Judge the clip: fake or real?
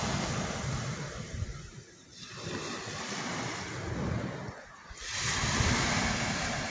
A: real